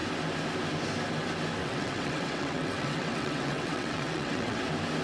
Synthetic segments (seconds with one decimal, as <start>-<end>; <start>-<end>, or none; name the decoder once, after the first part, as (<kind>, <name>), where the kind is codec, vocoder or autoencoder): 1.6-4.6 (vocoder, WaveNeXt)